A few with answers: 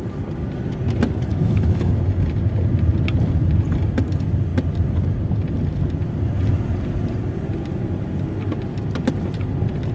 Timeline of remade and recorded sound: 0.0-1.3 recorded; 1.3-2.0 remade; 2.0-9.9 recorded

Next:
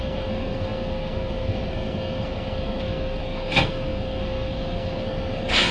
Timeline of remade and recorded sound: 0.0-5.7 remade

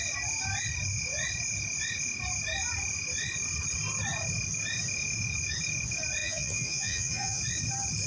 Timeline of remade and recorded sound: 0.0-6.2 recorded; 6.2-7.4 remade; 7.4-8.1 recorded

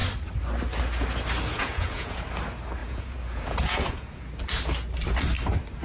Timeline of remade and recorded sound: 0.0-1.5 recorded; 1.5-2.2 remade; 2.2-2.8 recorded; 2.8-4.3 remade; 4.3-5.8 recorded

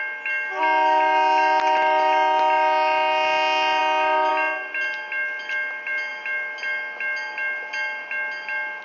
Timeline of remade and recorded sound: 0.0-8.8 recorded

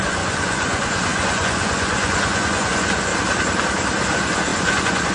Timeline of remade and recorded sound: 0.0-3.1 remade; 3.1-4.1 recorded; 4.1-5.1 remade

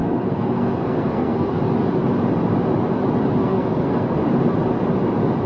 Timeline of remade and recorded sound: 0.0-1.5 remade; 1.5-3.4 recorded; 3.4-4.2 remade; 4.2-5.5 recorded